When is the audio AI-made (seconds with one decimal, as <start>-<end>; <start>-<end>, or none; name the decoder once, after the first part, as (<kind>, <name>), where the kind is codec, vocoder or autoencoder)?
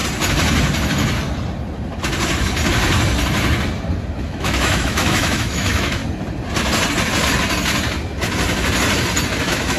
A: 4.2-6.0 (autoencoder, DAC-VAE); 9.4-9.8